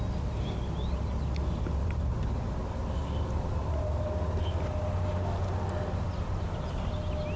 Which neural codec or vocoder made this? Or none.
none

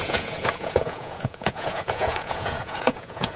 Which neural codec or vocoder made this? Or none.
vocoder, Vocos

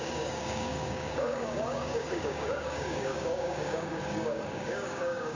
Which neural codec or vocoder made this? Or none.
codec, DAC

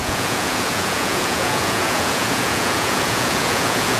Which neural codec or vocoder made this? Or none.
vocoder, Vocos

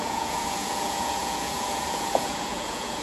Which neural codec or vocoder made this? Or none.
vocoder, Vocos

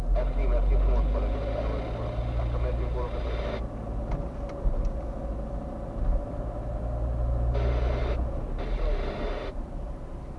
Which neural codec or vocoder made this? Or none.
none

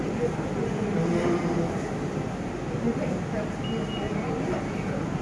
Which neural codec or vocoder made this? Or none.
none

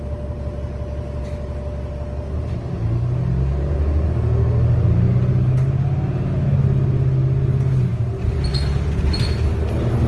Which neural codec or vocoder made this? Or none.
none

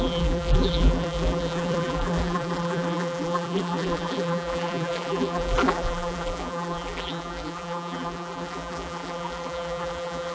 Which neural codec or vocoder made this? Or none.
vocoder, BigVGAN v2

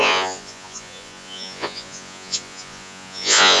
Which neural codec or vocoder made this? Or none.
vocoder, Vocos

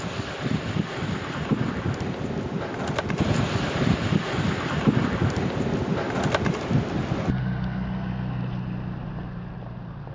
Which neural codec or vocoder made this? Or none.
none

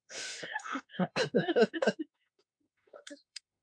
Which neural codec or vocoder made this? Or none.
autoencoder, DAC-VAE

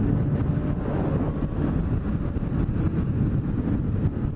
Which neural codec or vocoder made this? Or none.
none